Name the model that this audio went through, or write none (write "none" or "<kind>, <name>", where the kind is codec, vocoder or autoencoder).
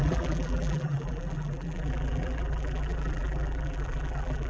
vocoder, BigVGAN v2